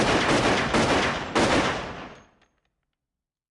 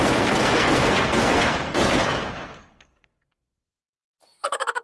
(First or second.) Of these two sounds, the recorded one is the first